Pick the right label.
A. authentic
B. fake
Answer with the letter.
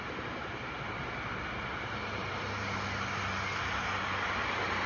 A